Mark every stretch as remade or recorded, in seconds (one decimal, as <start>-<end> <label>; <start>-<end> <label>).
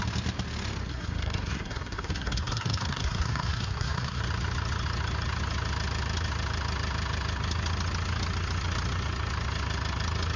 0.0-0.9 recorded; 0.9-4.2 remade; 4.2-10.4 recorded